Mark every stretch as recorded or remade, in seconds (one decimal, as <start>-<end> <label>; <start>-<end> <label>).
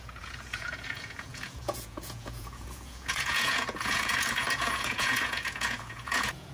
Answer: 0.0-6.5 remade